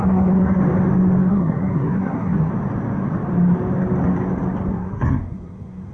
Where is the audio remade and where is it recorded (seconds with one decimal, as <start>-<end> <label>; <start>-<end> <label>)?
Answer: 0.0-0.6 remade; 0.6-1.3 recorded; 1.3-2.5 remade; 2.5-4.7 recorded; 4.7-5.9 remade